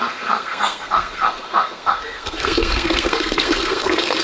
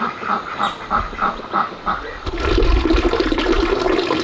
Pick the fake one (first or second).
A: first